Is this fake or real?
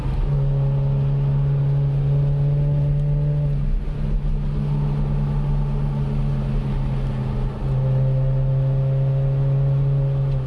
real